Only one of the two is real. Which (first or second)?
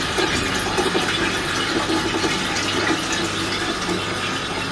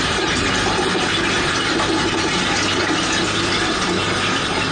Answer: first